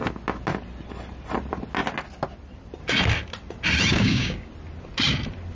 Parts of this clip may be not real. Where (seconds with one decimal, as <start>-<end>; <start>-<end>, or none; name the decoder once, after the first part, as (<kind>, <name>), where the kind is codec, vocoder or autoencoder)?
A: 3.9-4.5 (codec, DAC)